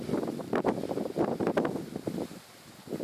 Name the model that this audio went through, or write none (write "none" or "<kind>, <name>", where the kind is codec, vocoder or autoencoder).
none